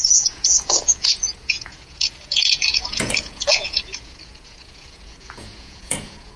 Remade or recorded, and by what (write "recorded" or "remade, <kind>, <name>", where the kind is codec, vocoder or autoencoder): remade, vocoder, Vocos